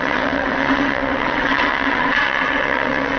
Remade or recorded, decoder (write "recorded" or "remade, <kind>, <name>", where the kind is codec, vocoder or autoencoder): remade, vocoder, WaveNeXt